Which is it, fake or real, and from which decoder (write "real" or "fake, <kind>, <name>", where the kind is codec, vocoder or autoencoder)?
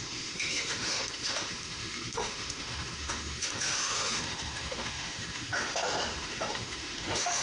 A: fake, autoencoder, DAC-VAE